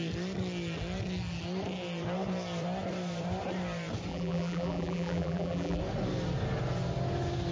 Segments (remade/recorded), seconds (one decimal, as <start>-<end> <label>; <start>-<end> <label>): 0.0-4.1 recorded; 4.1-5.8 remade; 5.8-7.5 recorded